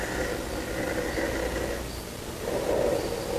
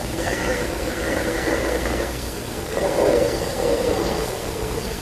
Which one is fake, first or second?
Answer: second